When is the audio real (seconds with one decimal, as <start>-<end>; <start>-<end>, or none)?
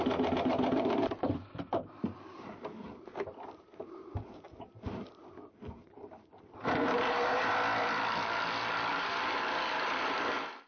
7.5-8.9